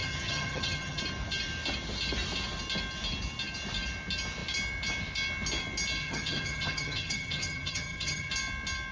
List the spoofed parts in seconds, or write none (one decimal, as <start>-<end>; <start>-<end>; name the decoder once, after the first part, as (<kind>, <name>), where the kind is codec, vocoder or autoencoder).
0.0-1.0 (vocoder, HiFi-GAN); 6.0-8.3